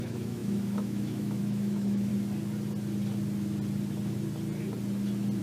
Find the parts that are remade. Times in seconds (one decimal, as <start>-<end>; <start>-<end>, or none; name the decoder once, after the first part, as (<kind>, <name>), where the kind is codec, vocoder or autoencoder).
0.0-2.1 (autoencoder, DAC-VAE)